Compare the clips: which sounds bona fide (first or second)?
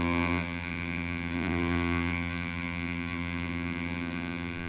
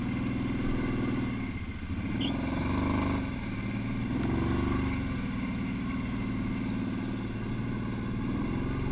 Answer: second